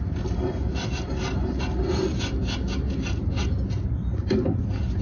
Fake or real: real